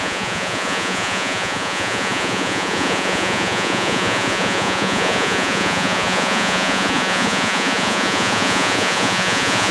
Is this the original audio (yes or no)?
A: no